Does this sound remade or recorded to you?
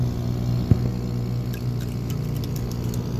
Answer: recorded